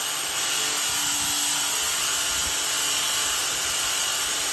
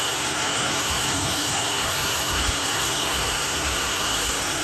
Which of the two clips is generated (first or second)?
second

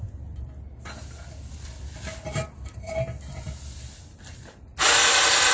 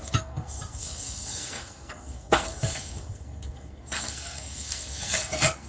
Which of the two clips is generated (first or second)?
second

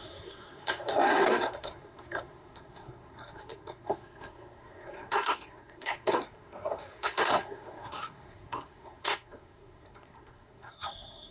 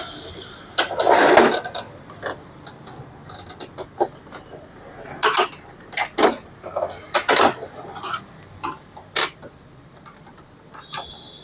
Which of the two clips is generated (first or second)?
first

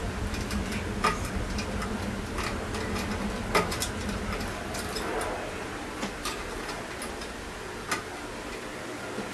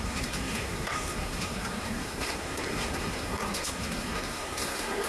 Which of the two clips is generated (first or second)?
second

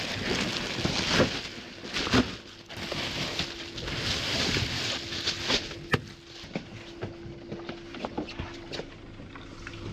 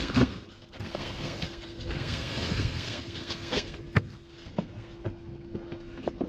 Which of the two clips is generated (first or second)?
second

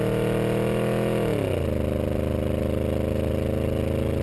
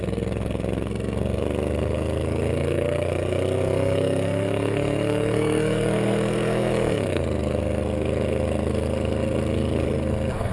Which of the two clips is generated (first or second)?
second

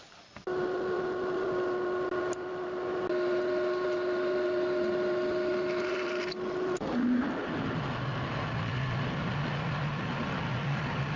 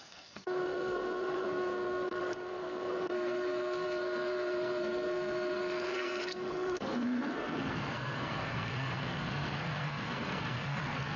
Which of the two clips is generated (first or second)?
second